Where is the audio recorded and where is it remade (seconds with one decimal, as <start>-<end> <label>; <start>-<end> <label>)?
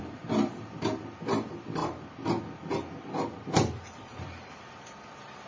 0.0-4.1 recorded; 4.1-5.5 remade